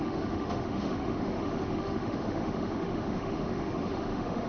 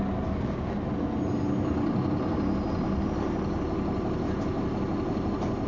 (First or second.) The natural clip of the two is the second